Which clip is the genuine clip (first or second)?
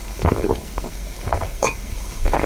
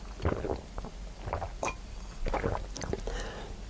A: second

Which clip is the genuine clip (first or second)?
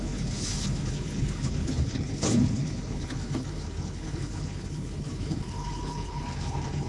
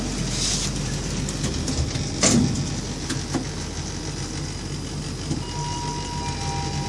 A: second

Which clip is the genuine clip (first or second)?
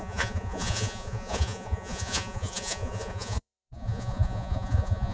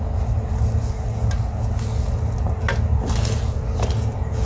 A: second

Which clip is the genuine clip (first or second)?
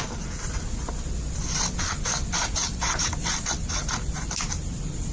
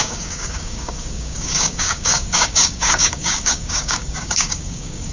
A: first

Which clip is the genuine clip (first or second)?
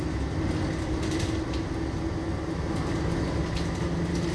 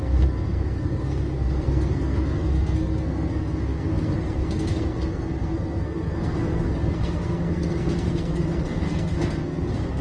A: first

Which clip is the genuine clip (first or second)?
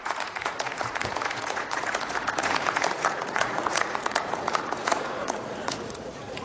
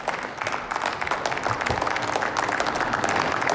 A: second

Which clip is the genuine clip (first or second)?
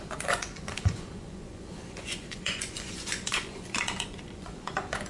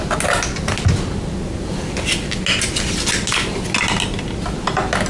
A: second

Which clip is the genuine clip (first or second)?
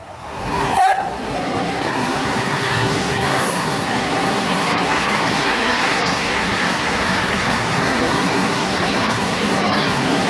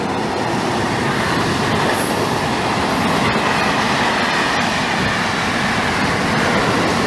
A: second